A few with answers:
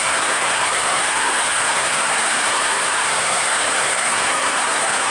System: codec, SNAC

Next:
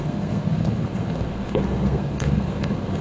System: codec, SNAC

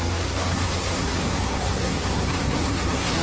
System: codec, SNAC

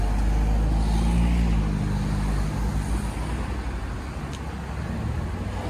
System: none